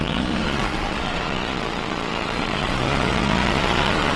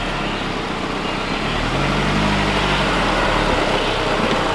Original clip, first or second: second